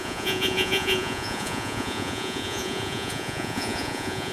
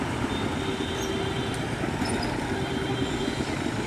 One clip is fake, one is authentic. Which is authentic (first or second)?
second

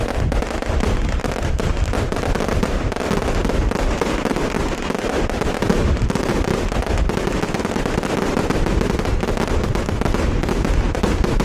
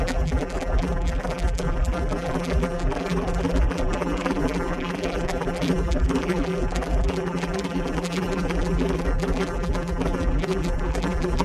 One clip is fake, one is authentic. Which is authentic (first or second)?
first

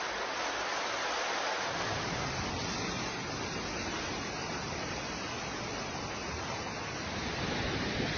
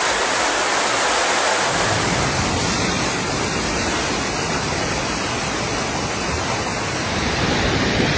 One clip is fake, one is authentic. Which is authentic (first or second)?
first